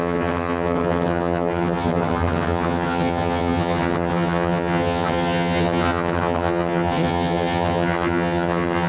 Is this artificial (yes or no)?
yes